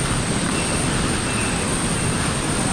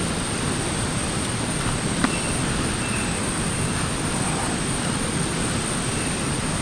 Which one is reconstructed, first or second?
second